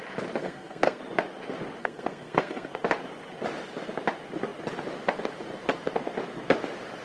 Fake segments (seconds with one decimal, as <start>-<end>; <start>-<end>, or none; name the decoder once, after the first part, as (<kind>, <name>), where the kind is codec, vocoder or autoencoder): 0.4-1.0 (codec, SNAC); 1.8-2.7

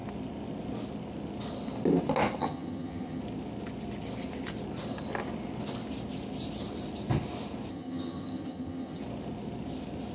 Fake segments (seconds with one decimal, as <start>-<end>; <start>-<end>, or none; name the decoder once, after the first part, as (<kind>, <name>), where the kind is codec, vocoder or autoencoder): 2.4-3.2 (vocoder, HiFi-GAN); 7.7-9.0